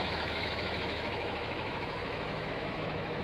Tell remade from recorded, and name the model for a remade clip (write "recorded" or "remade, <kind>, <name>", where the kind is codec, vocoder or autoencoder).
remade, autoencoder, DAC-VAE